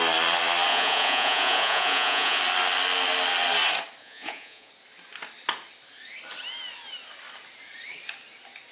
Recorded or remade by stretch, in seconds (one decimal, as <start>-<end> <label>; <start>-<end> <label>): 0.0-0.7 recorded; 0.7-2.4 remade; 2.4-4.0 recorded; 4.0-4.7 remade; 4.7-8.7 recorded